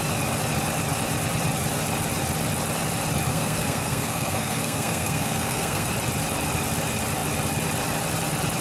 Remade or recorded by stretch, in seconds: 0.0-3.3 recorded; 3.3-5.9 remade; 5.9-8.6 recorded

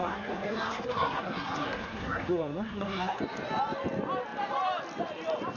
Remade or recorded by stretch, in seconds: 0.0-3.2 remade; 3.2-5.6 recorded

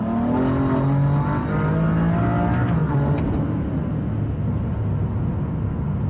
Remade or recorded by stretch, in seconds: 0.0-6.1 recorded

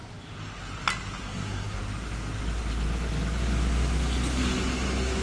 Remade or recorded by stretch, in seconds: 0.0-1.2 recorded; 1.2-1.8 remade; 1.8-5.2 recorded

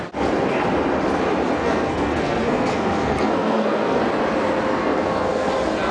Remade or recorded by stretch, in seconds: 0.0-1.6 recorded; 1.6-4.0 remade; 4.0-4.7 recorded; 4.7-5.5 remade; 5.5-5.9 recorded

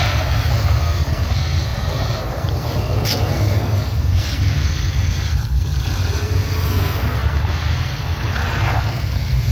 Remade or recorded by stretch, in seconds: 0.0-9.5 remade

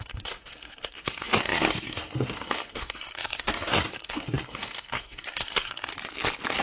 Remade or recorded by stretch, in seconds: 0.0-5.9 remade; 5.9-6.6 recorded